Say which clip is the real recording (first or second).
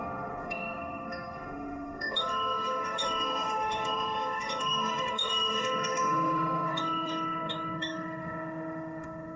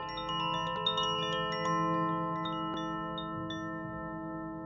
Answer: second